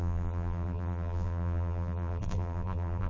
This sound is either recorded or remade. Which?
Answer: remade